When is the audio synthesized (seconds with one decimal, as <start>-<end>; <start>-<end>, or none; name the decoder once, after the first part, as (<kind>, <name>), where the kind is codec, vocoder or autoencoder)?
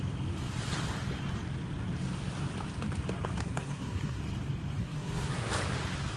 3.4-4.2 (codec, SNAC); 4.8-5.5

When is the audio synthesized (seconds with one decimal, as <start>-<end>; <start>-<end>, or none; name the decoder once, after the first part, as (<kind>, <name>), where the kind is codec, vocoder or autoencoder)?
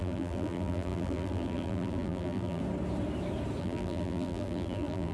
0.0-2.6 (vocoder, BigVGAN v2); 3.6-5.1